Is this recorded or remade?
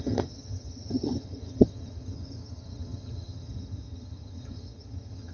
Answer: remade